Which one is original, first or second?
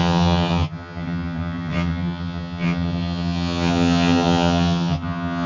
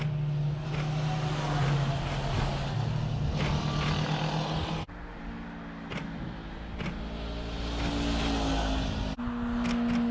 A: second